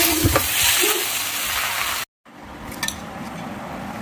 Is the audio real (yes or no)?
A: yes